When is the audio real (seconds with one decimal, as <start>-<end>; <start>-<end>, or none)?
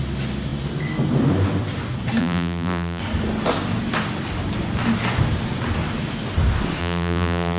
0.0-2.2; 3.0-6.8